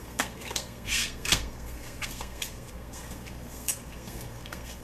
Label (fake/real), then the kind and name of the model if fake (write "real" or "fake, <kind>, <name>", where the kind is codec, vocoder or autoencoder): fake, codec, SNAC